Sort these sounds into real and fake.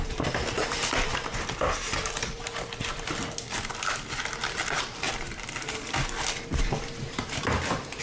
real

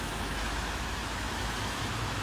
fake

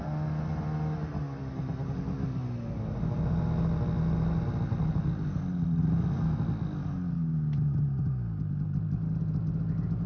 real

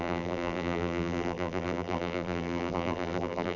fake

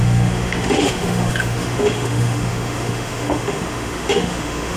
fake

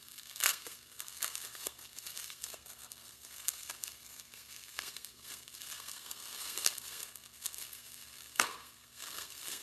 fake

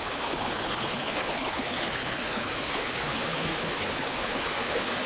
fake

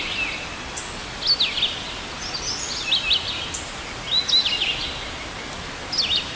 real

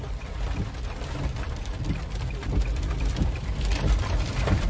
fake